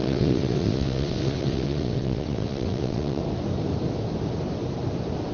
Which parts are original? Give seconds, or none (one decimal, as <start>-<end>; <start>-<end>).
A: 3.2-5.3